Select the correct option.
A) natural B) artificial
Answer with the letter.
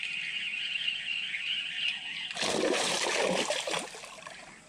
A